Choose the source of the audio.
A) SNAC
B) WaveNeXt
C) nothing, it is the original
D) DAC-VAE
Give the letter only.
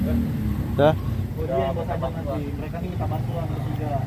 C